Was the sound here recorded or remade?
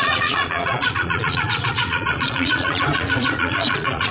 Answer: remade